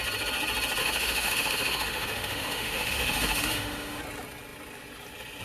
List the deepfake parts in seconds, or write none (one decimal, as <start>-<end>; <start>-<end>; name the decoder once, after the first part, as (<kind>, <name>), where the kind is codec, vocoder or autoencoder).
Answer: 0.8-4.0 (autoencoder, DAC-VAE)